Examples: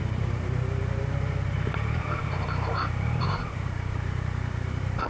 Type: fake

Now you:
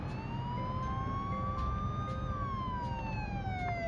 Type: real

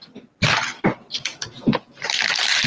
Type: real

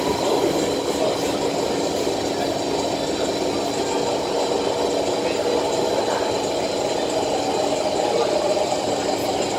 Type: real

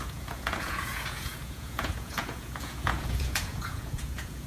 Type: fake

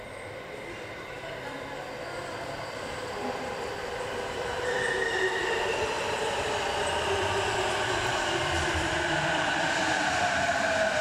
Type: fake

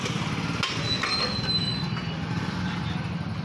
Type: real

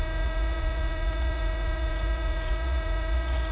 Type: fake